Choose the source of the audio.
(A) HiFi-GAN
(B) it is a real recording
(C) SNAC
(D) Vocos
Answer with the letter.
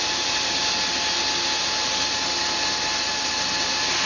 B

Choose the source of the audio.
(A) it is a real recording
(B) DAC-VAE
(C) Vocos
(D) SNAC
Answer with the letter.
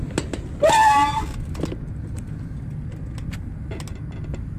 A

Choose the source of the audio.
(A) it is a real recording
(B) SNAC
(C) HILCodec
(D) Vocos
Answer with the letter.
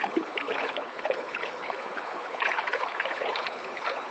C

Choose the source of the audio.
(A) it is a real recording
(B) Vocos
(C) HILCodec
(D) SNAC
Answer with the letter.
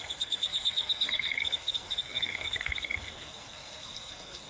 D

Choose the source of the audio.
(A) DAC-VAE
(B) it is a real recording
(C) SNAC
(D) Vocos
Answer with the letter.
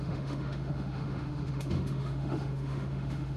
A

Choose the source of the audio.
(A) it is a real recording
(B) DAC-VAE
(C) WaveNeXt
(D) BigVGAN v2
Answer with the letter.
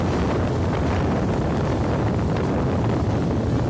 A